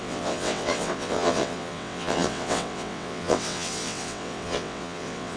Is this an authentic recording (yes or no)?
no